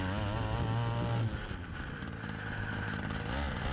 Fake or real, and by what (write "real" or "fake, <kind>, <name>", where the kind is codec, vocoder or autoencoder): real